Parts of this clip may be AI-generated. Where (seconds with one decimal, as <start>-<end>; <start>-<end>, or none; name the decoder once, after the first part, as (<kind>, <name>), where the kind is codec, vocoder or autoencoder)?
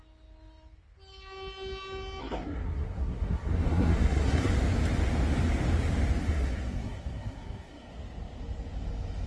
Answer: 2.2-4.5 (codec, SNAC); 6.2-7.9